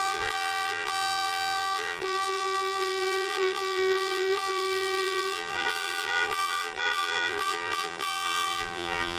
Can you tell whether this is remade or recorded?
remade